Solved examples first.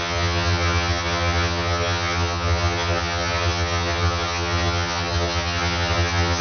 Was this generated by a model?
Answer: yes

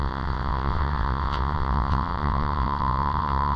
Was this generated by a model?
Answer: yes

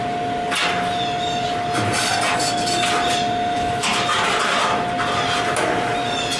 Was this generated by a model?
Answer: no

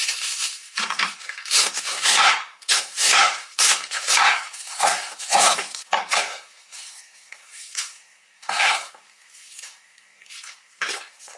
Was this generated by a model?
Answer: yes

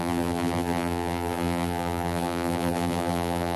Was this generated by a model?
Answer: yes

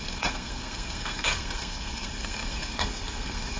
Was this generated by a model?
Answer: yes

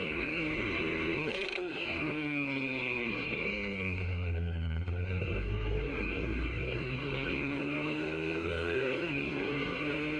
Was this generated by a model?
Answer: yes